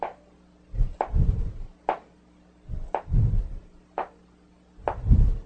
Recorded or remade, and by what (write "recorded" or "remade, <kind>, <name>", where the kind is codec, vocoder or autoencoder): recorded